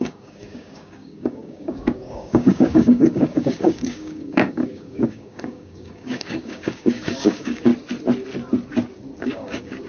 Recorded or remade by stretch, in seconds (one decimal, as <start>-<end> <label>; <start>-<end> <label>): 0.0-7.7 remade; 7.7-9.2 recorded; 9.2-9.9 remade